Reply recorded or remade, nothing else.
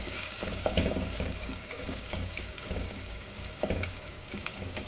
remade